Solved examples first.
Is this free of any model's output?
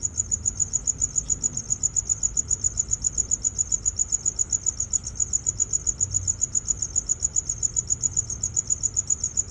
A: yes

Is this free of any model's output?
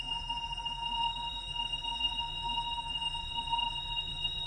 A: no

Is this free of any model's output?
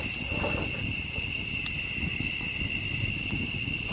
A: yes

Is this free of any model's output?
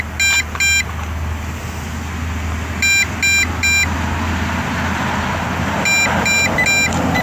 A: yes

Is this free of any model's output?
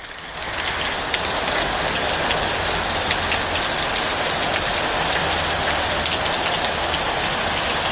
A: yes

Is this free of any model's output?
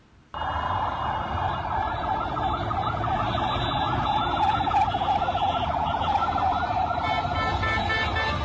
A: yes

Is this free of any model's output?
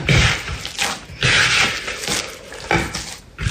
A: yes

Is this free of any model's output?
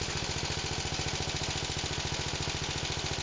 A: yes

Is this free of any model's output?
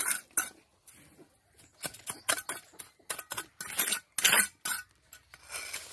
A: yes